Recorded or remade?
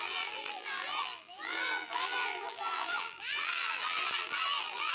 remade